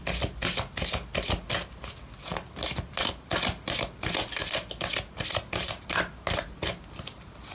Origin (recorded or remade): recorded